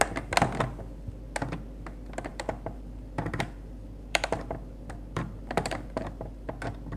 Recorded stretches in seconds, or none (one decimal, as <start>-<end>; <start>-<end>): 0.0-2.3; 6.5-7.0